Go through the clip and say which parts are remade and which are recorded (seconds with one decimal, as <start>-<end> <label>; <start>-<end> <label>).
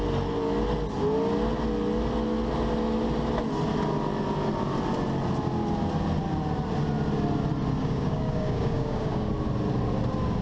0.0-7.8 recorded; 7.8-9.3 remade; 9.3-10.4 recorded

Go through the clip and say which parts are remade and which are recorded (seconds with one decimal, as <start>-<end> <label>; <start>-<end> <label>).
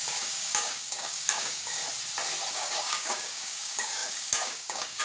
0.0-1.8 remade; 1.8-2.5 recorded; 2.5-5.0 remade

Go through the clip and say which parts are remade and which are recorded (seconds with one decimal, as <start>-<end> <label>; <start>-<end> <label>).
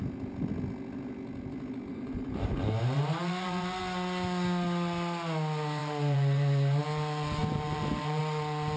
0.0-1.9 recorded; 1.9-3.8 remade; 3.8-5.8 recorded; 5.8-6.8 remade; 6.8-7.4 recorded; 7.4-8.2 remade; 8.2-8.8 recorded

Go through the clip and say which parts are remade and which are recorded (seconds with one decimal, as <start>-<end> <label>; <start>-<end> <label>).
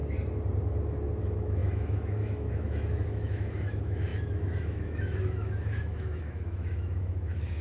0.0-1.2 recorded; 1.2-7.6 remade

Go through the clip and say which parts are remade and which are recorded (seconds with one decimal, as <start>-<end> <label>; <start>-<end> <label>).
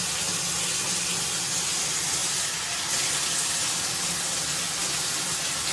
0.0-5.7 recorded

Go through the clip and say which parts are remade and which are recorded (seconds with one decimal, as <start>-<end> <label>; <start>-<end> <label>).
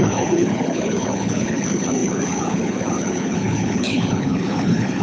0.0-5.0 remade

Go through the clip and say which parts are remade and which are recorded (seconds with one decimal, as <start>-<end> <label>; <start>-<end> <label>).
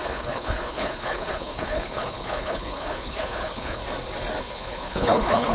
0.0-3.8 remade; 3.8-4.4 recorded; 4.4-5.5 remade